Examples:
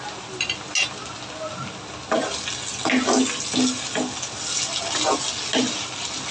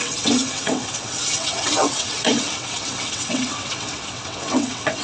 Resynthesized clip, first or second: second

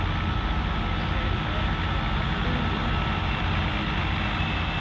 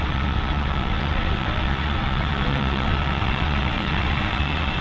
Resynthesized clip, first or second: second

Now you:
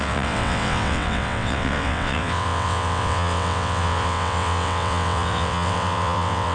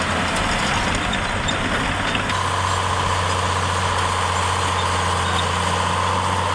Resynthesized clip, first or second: first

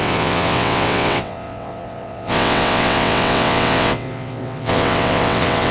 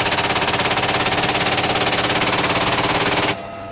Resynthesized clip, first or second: first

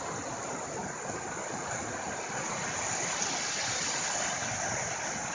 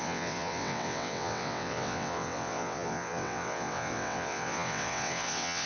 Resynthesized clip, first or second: second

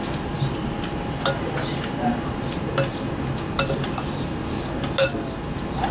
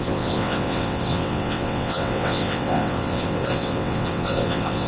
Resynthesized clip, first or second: second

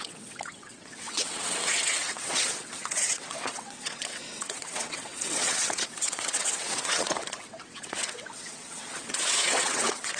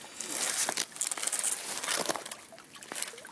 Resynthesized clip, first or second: first